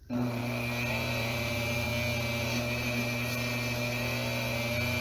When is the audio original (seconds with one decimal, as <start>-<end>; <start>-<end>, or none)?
0.4-0.9; 1.9-5.0